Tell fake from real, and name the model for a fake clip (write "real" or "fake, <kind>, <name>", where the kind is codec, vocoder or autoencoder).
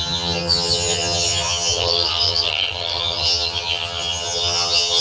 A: fake, vocoder, HiFi-GAN